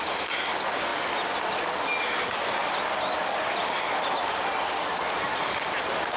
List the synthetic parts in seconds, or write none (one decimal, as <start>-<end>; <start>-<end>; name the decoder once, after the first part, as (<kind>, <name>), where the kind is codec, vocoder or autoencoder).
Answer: 2.6-5.5 (vocoder, BigVGAN v2)